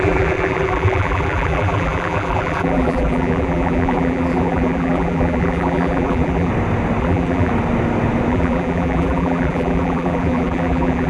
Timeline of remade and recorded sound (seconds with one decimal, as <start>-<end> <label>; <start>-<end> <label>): 0.0-6.5 remade; 6.5-7.0 recorded; 7.0-7.5 remade; 7.5-8.3 recorded; 8.3-11.1 remade